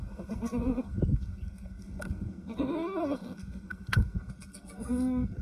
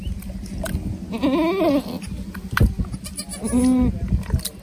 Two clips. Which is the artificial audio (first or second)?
first